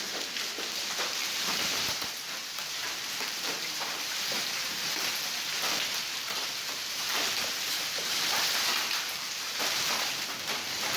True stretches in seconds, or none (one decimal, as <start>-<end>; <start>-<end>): 0.0-1.2; 4.9-5.9; 10.1-11.0